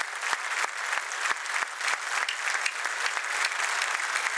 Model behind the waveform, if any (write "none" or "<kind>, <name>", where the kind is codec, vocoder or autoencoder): none